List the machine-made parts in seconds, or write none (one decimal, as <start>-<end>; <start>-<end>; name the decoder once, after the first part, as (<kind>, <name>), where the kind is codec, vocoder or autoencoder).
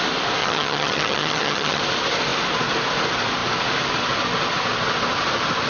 0.4-1.8 (vocoder, HiFi-GAN)